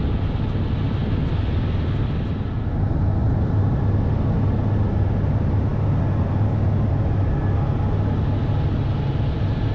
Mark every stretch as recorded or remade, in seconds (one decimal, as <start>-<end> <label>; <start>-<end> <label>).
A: 0.0-9.7 recorded

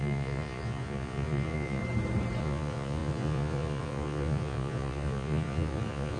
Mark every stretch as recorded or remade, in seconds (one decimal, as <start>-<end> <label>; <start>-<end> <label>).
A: 0.0-1.8 remade; 1.8-2.4 recorded; 2.4-6.2 remade

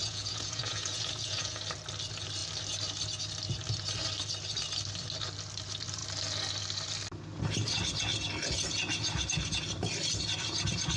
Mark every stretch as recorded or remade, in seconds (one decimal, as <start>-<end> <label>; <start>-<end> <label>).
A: 0.0-1.6 remade; 1.6-11.0 recorded

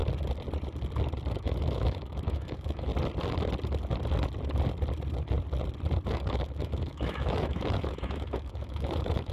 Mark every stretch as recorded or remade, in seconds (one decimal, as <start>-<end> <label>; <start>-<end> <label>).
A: 0.0-1.3 recorded; 1.3-2.9 remade; 2.9-6.1 recorded; 6.1-9.3 remade

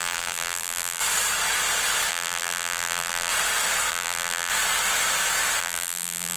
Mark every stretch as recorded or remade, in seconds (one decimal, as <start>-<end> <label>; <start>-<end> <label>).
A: 0.0-1.0 remade; 1.0-2.1 recorded; 2.1-3.3 remade; 3.3-3.9 recorded; 3.9-4.5 remade; 4.5-5.6 recorded; 5.6-6.4 remade

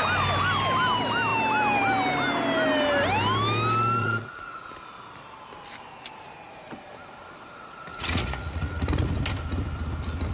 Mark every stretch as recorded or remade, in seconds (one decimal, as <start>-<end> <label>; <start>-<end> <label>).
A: 0.0-4.0 recorded; 4.0-4.7 remade; 4.7-7.9 recorded; 7.9-9.1 remade; 9.1-10.3 recorded

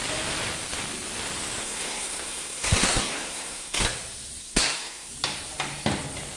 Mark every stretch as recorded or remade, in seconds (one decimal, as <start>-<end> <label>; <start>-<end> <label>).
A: 0.0-1.6 recorded; 1.6-3.8 remade; 3.8-4.4 recorded; 4.4-5.1 remade; 5.1-6.4 recorded

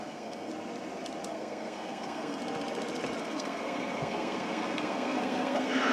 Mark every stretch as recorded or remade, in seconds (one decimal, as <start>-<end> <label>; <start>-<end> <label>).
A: 0.0-0.5 remade; 0.5-1.3 recorded; 1.3-2.4 remade; 2.4-3.2 recorded; 3.2-5.9 remade